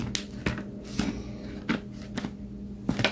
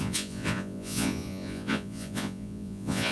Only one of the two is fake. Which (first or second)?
second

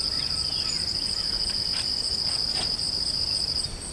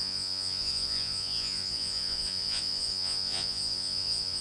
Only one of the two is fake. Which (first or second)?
second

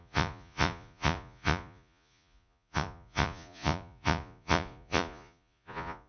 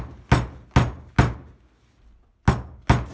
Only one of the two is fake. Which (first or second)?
first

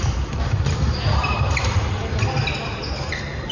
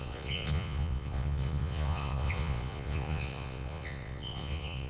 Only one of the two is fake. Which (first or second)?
second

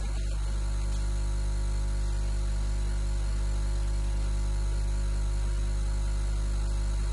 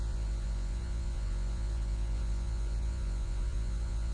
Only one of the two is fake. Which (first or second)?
second